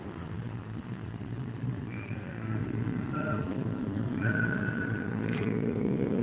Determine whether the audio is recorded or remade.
remade